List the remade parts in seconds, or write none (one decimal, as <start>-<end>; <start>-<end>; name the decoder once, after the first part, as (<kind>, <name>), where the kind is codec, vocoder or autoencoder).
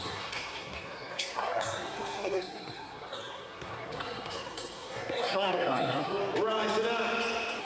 0.0-6.2 (codec, SNAC)